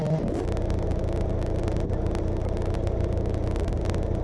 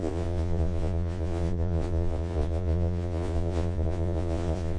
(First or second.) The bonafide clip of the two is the first